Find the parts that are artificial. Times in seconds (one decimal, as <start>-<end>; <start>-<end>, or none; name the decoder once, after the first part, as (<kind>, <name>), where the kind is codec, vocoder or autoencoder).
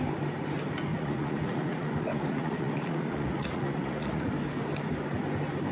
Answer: 0.9-4.3 (vocoder, Vocos)